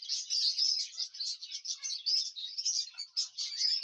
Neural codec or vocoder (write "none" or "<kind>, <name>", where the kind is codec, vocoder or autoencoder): none